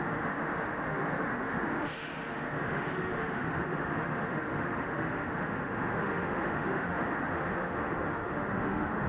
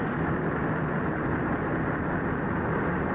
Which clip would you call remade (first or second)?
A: first